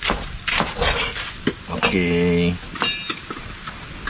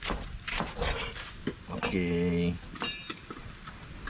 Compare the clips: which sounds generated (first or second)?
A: second